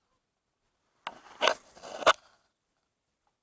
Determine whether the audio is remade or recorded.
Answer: recorded